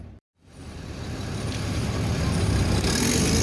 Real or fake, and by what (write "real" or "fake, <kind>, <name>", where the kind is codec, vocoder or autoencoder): fake, vocoder, BigVGAN v2